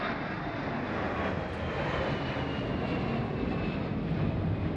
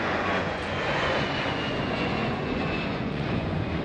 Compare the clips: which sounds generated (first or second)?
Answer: second